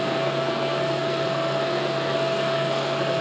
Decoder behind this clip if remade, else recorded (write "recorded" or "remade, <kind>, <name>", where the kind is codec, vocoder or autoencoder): remade, codec, SNAC